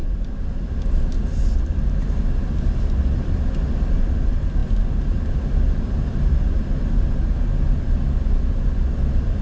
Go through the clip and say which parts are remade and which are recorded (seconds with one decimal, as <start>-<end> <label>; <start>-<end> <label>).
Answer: 0.0-9.4 recorded